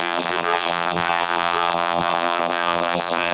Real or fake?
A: fake